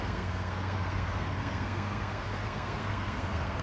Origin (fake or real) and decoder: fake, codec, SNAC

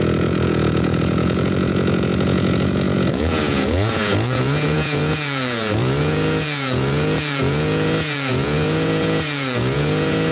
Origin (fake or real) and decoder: fake, vocoder, Vocos